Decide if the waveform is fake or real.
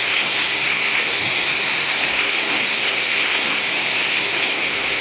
fake